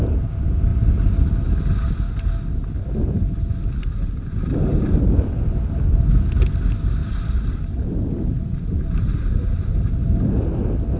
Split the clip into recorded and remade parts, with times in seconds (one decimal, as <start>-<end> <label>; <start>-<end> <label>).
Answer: 0.0-7.0 recorded; 7.0-9.8 remade; 9.8-11.0 recorded